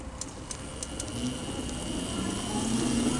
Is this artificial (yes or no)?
no